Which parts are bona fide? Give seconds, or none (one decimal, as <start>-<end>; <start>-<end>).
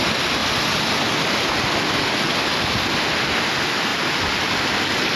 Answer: 0.0-5.2